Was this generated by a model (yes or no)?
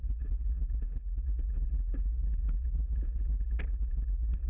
no